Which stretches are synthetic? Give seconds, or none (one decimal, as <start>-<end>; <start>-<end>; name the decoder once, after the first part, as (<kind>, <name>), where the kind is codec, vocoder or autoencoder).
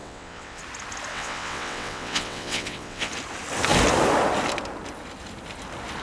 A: 0.0-0.6 (vocoder, WaveNeXt); 1.1-3.1